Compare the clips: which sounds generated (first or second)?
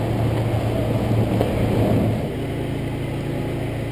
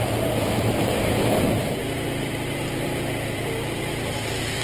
second